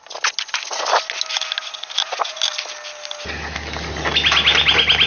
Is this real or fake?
real